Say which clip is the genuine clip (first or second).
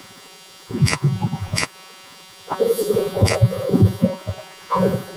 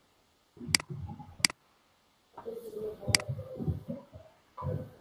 second